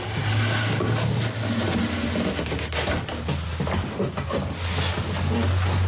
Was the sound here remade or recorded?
recorded